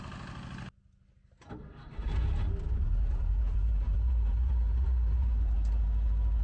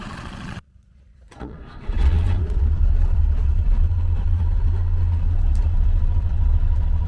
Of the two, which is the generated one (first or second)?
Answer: second